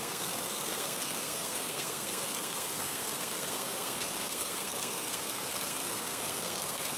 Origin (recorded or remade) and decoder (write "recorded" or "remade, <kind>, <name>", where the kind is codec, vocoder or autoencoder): remade, codec, SNAC